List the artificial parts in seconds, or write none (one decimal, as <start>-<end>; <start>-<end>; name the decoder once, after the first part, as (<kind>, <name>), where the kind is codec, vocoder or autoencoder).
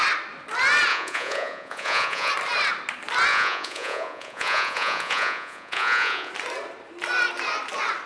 0.9-2.3 (vocoder, Vocos); 3.3-6.3